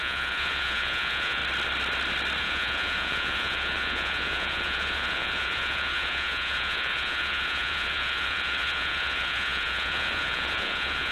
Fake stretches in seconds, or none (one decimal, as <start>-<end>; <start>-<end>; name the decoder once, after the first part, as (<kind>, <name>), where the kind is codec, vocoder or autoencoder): 0.0-1.4 (vocoder, Vocos); 2.4-11.1